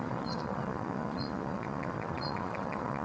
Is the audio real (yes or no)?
no